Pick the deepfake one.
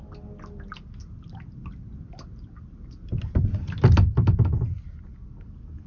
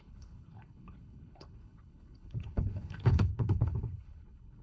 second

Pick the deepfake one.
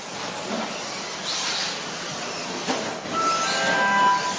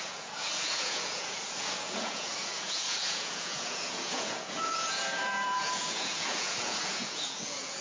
second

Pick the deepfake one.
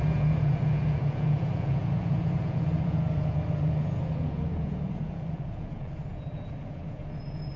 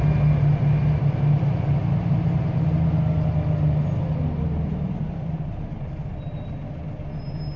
first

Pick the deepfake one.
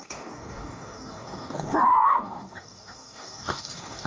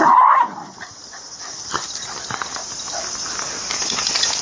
first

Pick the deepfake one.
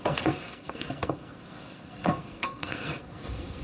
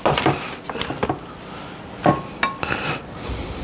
first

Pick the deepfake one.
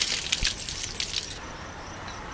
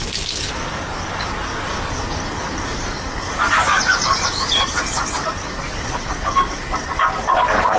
second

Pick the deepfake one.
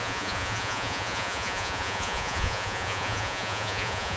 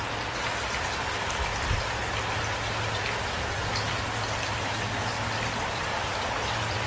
first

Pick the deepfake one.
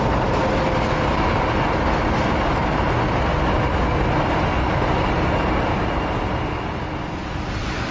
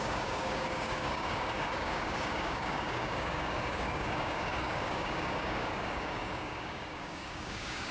second